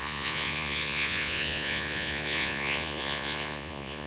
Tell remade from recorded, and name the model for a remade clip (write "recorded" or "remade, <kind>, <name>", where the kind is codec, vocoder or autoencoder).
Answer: remade, vocoder, Vocos